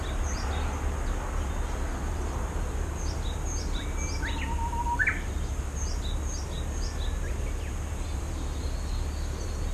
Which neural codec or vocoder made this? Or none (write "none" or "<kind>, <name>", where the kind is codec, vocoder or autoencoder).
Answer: none